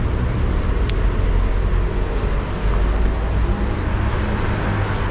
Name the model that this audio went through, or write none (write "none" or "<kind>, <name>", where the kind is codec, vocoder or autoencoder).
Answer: none